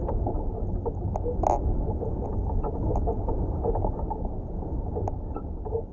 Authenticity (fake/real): real